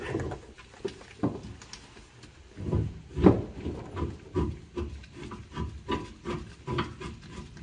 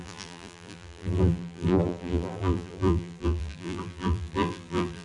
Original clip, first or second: first